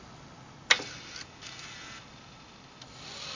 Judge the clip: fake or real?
real